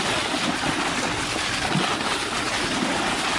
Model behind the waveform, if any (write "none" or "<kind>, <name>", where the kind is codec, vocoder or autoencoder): none